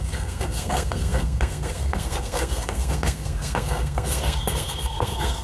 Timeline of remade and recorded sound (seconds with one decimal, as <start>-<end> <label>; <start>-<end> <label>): 0.0-5.4 remade